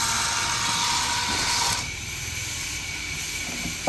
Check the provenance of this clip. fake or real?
real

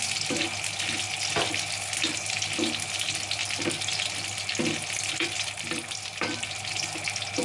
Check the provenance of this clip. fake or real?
real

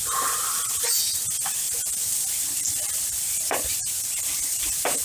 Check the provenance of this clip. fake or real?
fake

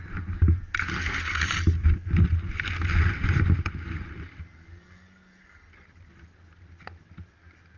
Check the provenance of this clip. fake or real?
real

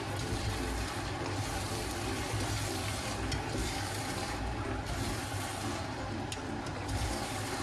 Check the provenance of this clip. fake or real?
fake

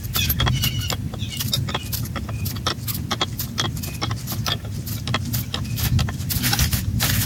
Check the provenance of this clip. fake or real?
real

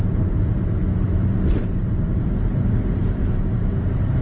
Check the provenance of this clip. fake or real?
fake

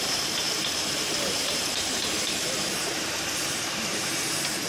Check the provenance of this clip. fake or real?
fake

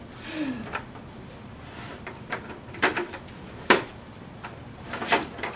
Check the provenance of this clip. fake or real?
fake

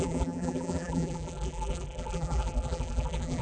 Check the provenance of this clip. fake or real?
fake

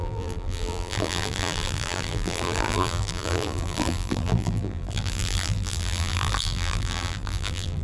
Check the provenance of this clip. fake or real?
fake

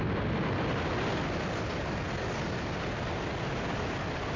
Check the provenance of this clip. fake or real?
real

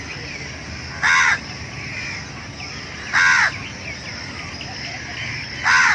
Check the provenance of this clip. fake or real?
real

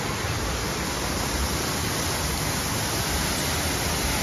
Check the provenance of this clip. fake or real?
real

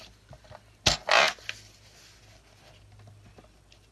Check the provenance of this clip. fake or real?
real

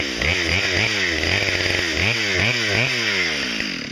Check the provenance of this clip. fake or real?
real